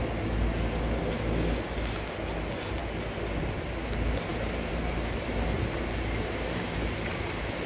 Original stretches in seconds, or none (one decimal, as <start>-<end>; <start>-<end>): 0.0-4.3